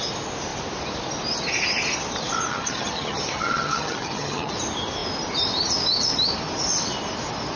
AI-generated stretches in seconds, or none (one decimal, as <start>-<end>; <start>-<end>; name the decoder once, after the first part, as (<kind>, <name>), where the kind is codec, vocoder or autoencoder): 2.5-4.5 (vocoder, HiFi-GAN)